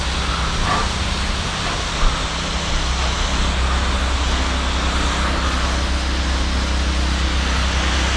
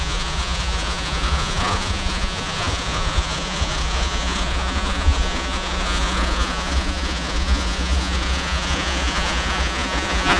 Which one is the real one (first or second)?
first